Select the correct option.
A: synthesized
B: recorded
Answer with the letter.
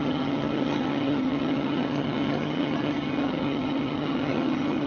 A